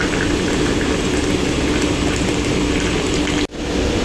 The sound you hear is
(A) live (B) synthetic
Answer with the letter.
A